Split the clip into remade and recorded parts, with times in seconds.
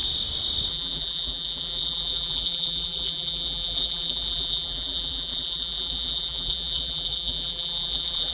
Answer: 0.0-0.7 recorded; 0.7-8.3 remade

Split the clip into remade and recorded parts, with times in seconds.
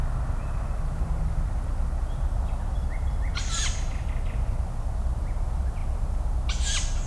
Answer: 0.0-7.1 recorded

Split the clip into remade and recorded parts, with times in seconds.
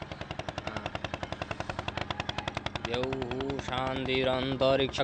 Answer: 0.0-5.0 recorded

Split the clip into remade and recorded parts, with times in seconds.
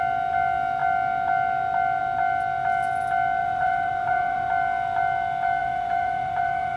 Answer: 0.0-3.4 recorded; 3.4-4.5 remade; 4.5-5.6 recorded; 5.6-6.8 remade